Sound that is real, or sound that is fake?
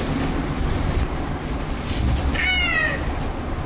real